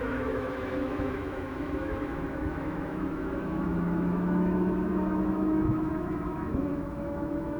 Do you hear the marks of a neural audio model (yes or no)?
yes